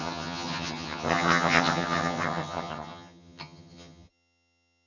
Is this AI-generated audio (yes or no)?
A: yes